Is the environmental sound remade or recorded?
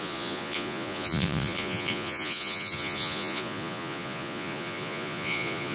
remade